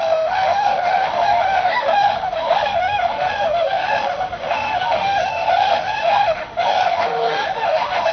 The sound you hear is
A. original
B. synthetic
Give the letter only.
B